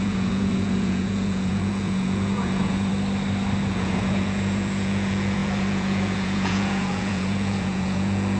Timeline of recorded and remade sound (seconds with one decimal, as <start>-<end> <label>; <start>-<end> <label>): 0.0-2.9 remade; 2.9-3.7 recorded; 3.7-8.4 remade